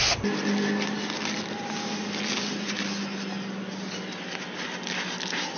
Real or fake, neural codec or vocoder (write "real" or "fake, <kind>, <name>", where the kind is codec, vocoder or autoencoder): real